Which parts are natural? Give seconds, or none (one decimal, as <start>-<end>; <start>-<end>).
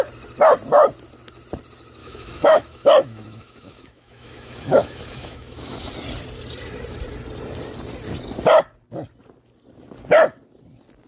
0.0-2.0; 5.9-11.1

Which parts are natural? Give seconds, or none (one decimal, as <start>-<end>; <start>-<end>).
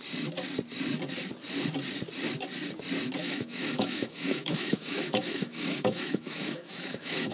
0.0-3.2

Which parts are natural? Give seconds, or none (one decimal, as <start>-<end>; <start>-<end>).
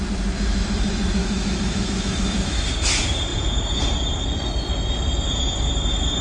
0.0-1.2; 2.6-6.2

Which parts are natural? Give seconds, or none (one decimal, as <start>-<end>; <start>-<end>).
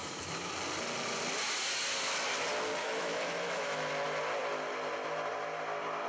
0.5-2.8; 3.9-6.1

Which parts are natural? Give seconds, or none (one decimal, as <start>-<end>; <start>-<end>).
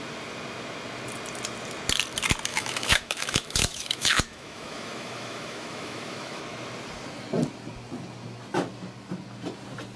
0.0-2.5; 6.4-10.0